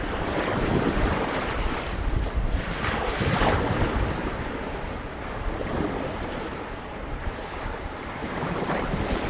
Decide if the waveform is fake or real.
fake